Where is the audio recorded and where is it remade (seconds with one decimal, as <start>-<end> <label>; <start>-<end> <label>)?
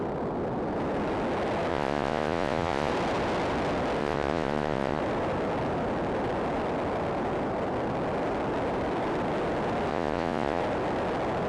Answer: 0.0-1.7 recorded; 1.7-2.9 remade; 2.9-4.0 recorded; 4.0-5.0 remade; 5.0-9.9 recorded; 9.9-10.6 remade; 10.6-11.5 recorded